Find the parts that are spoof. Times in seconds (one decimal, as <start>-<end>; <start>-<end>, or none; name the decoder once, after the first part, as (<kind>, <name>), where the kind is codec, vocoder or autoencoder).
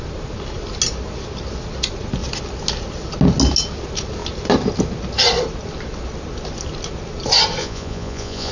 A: 7.6-8.5 (vocoder, Vocos)